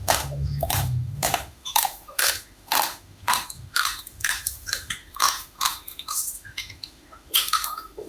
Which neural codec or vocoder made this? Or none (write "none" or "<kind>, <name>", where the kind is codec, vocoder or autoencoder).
autoencoder, DAC-VAE